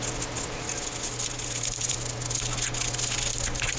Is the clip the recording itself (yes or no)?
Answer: yes